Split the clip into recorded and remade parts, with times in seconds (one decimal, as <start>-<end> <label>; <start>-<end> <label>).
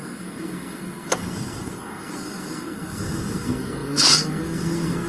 0.0-5.1 remade